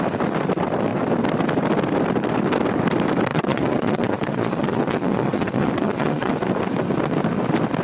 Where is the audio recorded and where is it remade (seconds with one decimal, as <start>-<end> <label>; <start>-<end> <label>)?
0.0-3.3 recorded; 3.3-6.3 remade; 6.3-7.8 recorded